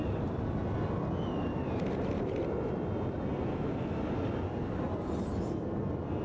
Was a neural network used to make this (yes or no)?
no